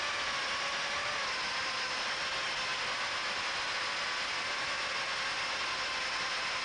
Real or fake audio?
real